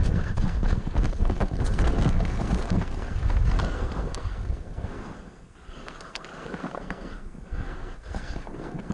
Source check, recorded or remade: remade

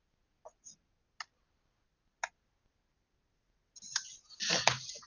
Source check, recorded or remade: recorded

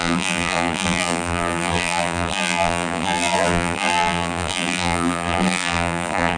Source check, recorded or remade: remade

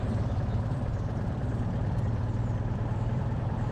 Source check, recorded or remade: remade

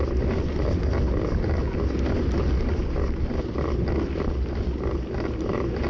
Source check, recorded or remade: recorded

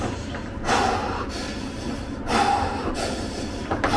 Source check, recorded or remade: remade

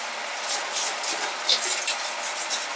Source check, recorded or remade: recorded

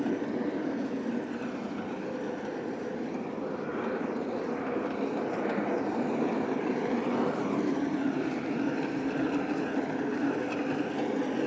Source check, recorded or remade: recorded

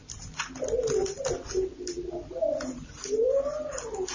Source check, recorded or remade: recorded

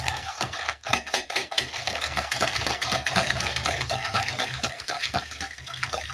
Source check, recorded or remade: remade